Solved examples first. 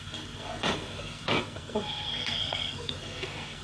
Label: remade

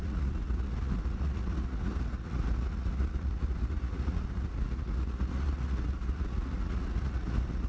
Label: remade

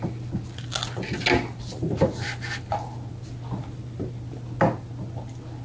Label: recorded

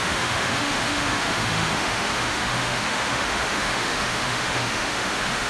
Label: remade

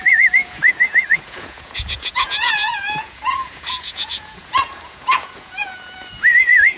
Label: remade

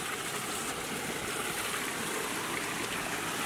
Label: recorded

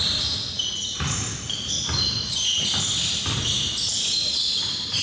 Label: recorded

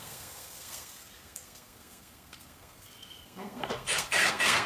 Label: remade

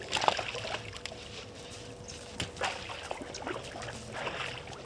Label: recorded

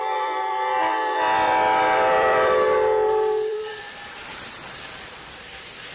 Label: remade